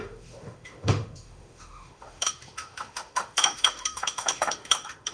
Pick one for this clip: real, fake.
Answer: fake